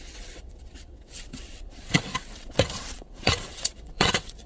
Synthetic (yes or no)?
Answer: yes